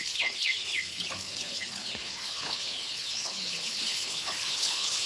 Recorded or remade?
remade